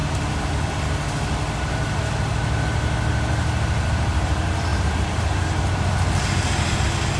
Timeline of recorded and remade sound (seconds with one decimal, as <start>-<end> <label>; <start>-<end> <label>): 0.0-4.7 recorded; 4.7-5.3 remade; 5.3-7.2 recorded